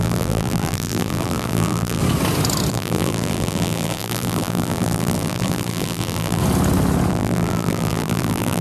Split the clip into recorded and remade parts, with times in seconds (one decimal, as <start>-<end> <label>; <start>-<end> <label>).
0.0-2.0 remade; 2.0-2.7 recorded; 2.7-6.4 remade; 6.4-7.1 recorded; 7.1-8.6 remade